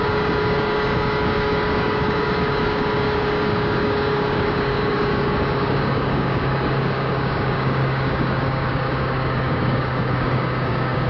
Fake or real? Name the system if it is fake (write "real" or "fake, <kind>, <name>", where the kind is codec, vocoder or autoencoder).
fake, codec, DAC